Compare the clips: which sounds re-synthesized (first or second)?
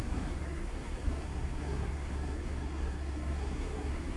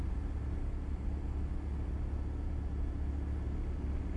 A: first